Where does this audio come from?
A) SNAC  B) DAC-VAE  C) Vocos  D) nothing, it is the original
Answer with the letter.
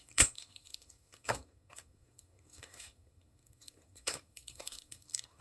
A